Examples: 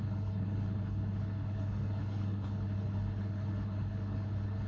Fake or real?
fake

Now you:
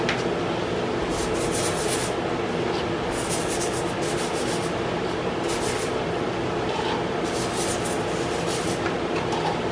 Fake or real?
real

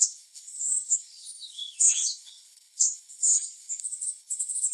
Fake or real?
fake